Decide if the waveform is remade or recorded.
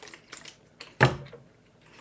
remade